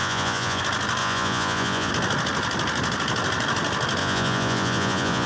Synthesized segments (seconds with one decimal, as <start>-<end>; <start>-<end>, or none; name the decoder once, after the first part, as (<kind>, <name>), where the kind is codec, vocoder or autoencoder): 0.0-0.6 (vocoder, Vocos); 1.0-1.9; 4.0-5.3